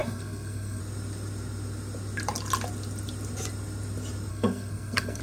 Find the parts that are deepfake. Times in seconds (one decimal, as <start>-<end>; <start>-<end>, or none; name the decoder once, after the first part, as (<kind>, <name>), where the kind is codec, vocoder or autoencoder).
0.0-0.8 (codec, SNAC); 4.3-5.2